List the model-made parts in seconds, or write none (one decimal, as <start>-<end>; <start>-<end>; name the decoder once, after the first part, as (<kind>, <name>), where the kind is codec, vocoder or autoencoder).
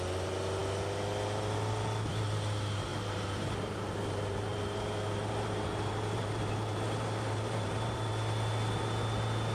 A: 2.9-8.1 (vocoder, BigVGAN v2)